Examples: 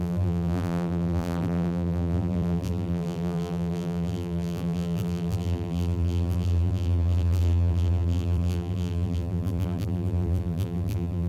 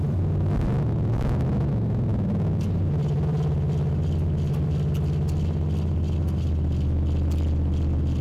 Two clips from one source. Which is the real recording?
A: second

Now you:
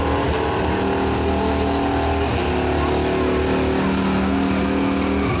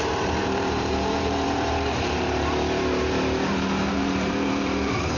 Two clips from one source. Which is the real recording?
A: first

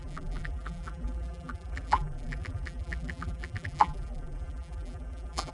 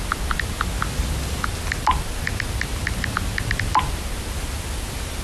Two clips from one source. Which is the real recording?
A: second